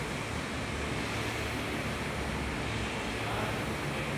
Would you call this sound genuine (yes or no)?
yes